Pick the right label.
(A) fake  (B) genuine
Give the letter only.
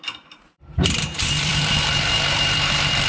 A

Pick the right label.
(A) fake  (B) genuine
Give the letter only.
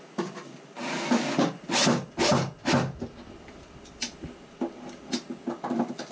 B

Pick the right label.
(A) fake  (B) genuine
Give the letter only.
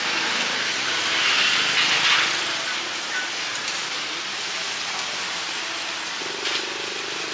B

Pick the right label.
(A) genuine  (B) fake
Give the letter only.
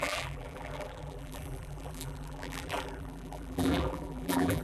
B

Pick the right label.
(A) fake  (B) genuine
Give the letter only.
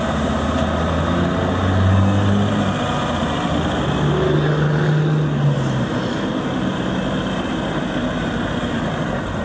B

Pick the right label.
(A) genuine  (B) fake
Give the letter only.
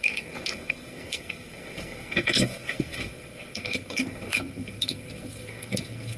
B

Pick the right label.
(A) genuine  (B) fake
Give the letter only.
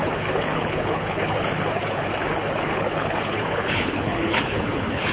B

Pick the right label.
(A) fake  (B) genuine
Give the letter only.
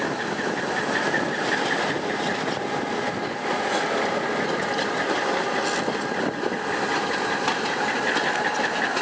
B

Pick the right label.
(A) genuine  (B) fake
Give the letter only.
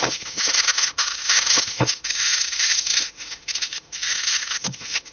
B